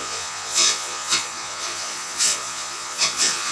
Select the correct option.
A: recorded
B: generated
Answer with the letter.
B